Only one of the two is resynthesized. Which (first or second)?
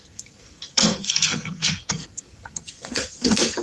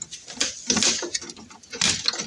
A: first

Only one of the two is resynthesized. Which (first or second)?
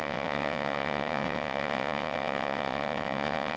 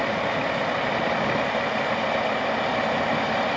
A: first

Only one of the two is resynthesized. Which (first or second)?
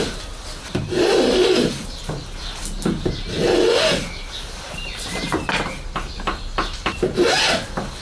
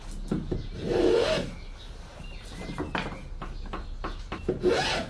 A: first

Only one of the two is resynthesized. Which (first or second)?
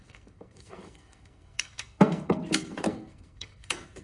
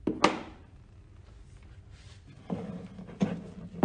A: first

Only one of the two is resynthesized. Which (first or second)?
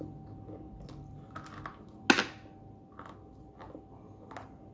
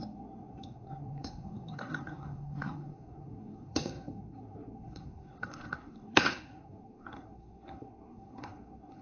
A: second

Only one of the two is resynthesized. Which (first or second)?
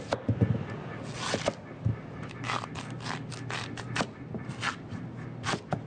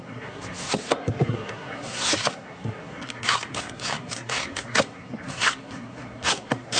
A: second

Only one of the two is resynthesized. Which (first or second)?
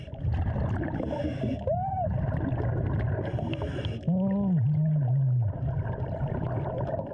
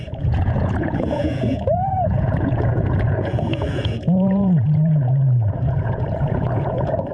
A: second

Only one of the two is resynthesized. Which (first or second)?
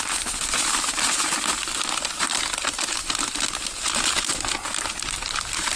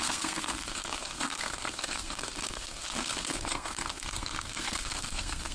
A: second